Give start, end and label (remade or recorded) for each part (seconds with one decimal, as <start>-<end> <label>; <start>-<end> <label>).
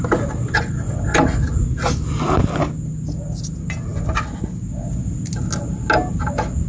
0.0-6.7 recorded